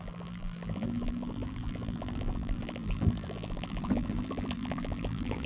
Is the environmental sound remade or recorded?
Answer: remade